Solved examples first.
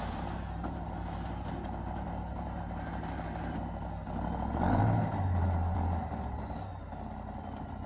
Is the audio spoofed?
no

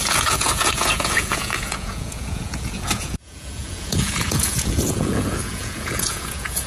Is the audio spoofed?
yes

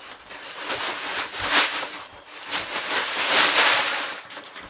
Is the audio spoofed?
yes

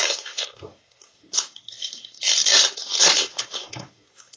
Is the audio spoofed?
yes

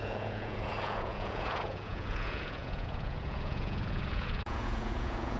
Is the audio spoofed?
yes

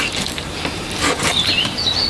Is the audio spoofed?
no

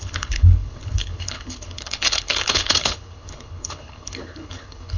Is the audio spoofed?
yes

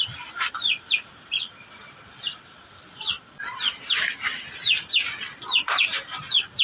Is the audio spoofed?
yes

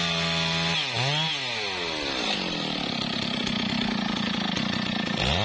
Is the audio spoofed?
no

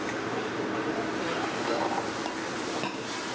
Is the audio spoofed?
no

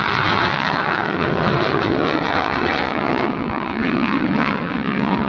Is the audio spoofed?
yes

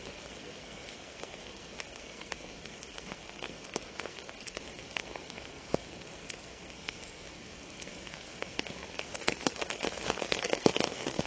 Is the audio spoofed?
yes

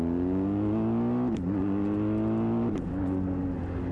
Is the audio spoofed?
no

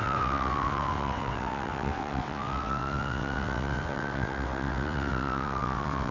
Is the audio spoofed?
yes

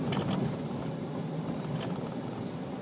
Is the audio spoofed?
no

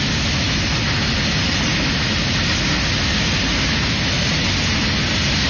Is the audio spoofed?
no